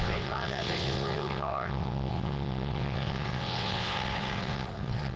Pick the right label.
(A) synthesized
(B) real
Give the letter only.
A